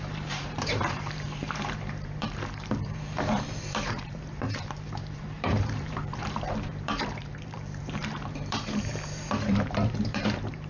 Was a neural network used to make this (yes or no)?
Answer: yes